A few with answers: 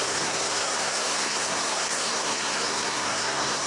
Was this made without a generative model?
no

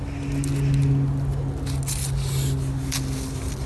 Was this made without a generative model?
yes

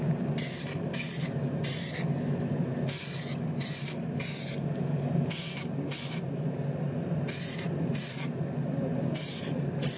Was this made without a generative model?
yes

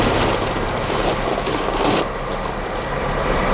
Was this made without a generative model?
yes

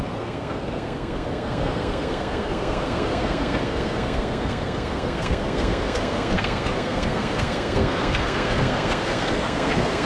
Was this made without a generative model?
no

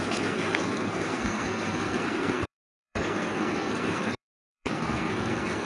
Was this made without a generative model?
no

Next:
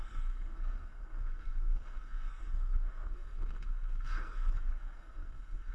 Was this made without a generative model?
no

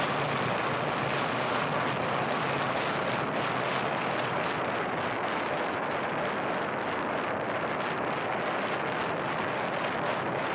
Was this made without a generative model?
yes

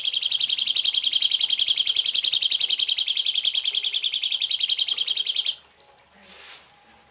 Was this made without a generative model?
yes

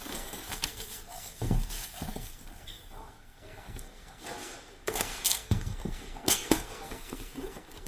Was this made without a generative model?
no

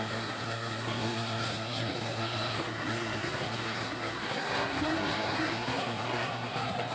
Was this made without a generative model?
no